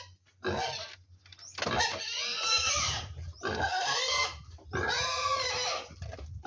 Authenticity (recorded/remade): recorded